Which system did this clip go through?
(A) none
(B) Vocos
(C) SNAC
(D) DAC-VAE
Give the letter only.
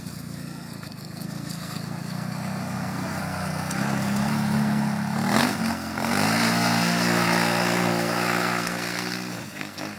C